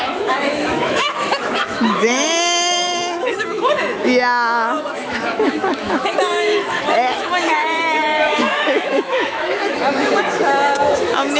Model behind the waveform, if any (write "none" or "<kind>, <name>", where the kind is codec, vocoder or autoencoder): autoencoder, DAC-VAE